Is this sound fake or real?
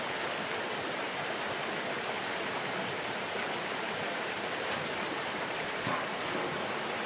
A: real